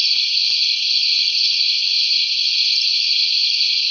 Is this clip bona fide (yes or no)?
yes